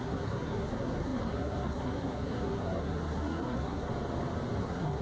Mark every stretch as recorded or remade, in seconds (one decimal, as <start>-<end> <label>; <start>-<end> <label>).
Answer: 0.0-3.9 remade; 3.9-4.6 recorded; 4.6-5.0 remade